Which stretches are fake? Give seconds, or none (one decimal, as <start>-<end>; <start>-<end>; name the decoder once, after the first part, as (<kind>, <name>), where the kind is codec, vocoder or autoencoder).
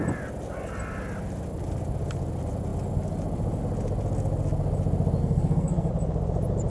5.2-5.9 (codec, SNAC)